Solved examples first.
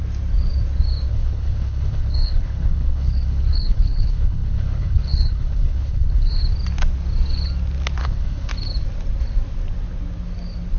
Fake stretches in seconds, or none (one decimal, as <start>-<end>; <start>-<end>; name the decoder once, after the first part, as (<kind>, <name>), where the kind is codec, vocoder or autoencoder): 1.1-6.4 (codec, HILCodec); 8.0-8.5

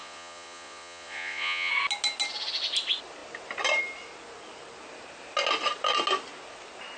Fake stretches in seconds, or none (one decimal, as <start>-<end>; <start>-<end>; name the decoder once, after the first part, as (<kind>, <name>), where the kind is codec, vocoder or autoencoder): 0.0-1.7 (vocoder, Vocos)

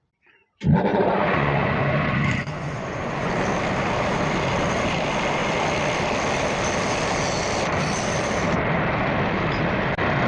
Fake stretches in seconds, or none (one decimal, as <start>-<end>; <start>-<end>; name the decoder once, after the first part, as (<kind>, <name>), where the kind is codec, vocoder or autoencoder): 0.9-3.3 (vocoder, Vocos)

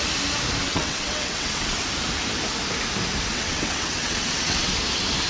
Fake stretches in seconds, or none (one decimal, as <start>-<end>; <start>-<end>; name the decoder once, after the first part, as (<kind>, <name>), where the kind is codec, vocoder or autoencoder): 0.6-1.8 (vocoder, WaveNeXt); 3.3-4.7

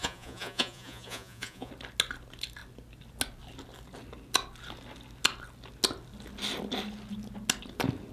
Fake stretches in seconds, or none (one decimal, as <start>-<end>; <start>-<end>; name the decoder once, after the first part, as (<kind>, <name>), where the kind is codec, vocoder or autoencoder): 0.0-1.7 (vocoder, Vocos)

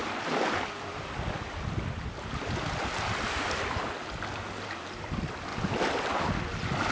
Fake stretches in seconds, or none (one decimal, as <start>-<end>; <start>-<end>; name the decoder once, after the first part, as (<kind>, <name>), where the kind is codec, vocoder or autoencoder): 5.5-6.0 (vocoder, BigVGAN v2)

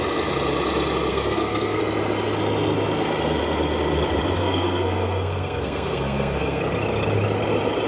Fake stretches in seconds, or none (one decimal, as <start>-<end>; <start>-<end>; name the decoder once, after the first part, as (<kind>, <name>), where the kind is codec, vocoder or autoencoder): 1.1-1.8 (codec, SNAC); 4.4-6.6

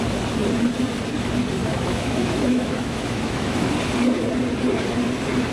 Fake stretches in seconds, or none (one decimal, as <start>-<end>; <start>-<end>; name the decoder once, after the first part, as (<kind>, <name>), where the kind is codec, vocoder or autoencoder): 1.6-3.7 (autoencoder, DAC-VAE)